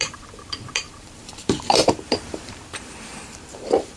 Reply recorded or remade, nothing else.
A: remade